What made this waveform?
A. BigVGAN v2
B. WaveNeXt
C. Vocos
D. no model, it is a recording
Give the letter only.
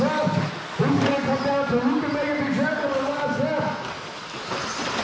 D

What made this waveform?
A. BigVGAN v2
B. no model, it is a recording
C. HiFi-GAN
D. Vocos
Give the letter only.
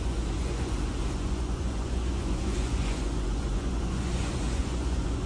D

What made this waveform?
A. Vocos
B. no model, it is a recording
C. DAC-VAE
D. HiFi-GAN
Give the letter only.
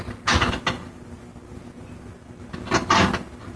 B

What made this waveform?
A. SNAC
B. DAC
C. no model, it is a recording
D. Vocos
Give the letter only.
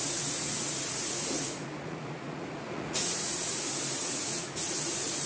D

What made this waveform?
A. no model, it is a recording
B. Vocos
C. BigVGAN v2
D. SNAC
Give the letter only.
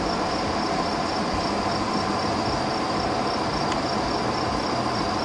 A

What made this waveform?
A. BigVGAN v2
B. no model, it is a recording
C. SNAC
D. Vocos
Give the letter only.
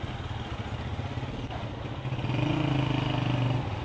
B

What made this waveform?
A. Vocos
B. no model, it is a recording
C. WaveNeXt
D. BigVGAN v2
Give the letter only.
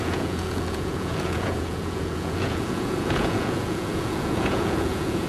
A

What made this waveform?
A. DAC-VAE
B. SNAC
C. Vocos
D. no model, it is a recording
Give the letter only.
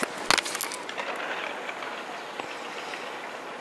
D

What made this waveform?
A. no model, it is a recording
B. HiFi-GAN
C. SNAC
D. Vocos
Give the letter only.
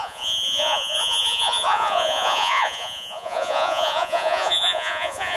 D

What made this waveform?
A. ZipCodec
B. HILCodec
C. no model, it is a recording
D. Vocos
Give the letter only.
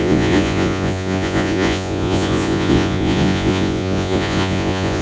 D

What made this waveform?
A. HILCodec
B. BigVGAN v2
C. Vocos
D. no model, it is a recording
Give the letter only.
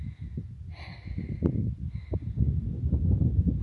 D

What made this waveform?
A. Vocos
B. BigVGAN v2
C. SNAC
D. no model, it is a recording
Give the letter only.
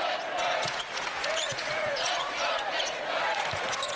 A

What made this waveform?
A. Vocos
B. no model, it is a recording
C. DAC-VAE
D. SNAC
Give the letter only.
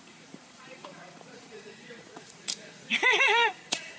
A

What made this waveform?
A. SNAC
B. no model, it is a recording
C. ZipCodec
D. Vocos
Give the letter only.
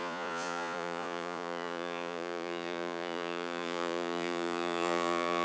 D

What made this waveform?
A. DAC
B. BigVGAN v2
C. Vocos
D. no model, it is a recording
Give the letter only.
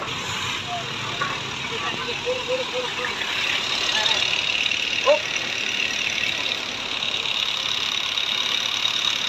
D